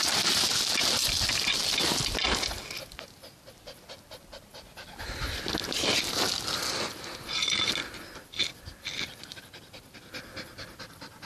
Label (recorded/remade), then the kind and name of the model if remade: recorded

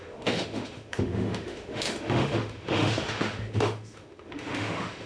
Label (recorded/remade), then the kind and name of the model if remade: remade, autoencoder, DAC-VAE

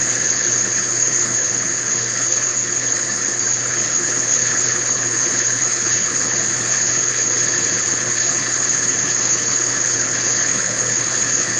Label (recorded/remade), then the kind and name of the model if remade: remade, codec, HILCodec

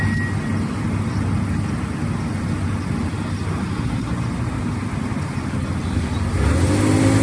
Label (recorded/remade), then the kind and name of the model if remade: recorded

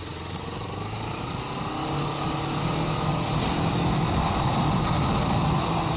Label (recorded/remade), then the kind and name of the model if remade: recorded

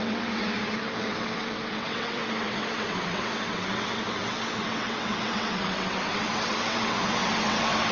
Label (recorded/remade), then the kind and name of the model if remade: remade, vocoder, WaveNeXt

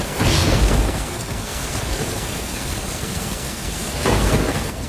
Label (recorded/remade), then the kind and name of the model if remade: remade, codec, SNAC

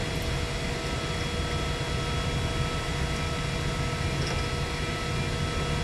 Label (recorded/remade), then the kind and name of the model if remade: recorded